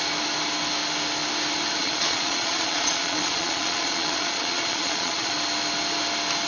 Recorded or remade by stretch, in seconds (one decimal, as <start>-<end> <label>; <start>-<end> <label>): 0.0-1.8 recorded; 1.8-5.3 remade; 5.3-6.5 recorded